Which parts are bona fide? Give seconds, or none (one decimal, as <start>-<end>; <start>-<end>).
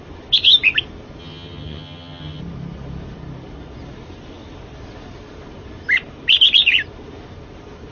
0.0-1.2; 2.4-7.9